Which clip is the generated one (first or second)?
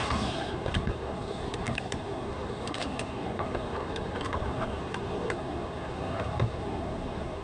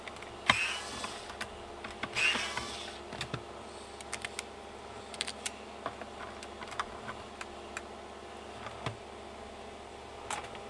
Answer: first